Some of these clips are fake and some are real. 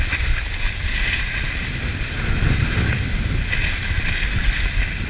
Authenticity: real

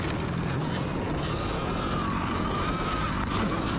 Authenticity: real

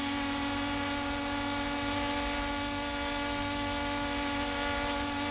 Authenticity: real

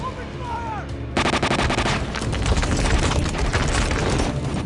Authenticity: real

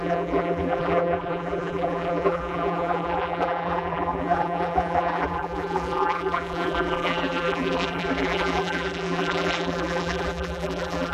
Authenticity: fake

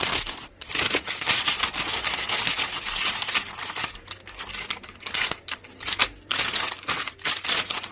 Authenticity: real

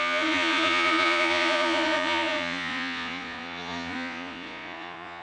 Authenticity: fake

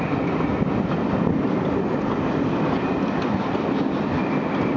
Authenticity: real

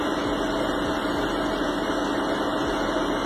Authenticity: real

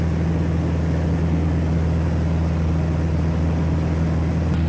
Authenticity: real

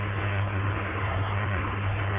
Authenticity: fake